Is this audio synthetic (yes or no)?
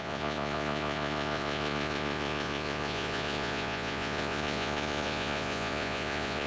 yes